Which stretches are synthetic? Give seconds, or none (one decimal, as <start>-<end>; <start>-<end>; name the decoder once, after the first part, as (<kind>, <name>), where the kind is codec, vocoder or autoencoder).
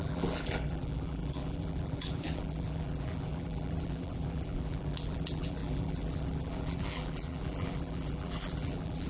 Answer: 0.0-9.1 (vocoder, BigVGAN v2)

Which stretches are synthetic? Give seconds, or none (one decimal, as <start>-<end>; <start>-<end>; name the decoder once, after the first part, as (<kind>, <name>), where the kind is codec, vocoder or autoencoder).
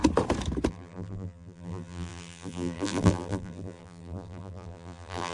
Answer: 0.7-5.3 (vocoder, BigVGAN v2)